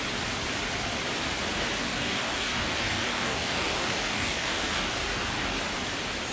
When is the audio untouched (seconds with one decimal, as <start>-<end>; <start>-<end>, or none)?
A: 0.0-1.8; 5.6-6.3